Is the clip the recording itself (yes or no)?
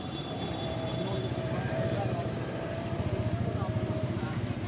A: no